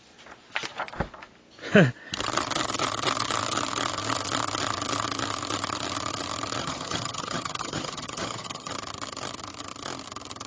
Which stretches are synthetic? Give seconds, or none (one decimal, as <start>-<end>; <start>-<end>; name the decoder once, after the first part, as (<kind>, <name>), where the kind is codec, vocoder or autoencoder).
6.6-8.7 (vocoder, HiFi-GAN)